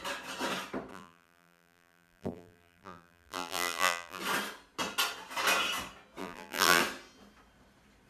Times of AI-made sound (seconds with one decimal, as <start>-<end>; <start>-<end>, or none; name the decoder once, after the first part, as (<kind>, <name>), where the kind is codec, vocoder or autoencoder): 0.9-4.2 (vocoder, BigVGAN v2); 6.2-6.8